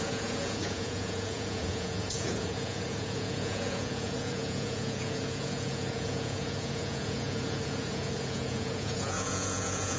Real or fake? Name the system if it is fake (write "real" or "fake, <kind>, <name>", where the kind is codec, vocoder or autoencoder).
fake, vocoder, Vocos